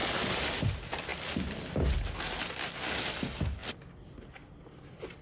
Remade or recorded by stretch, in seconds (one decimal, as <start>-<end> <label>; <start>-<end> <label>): 0.0-5.2 recorded